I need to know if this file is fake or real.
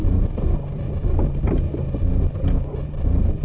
fake